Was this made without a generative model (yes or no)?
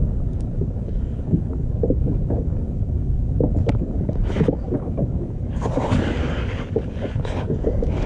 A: no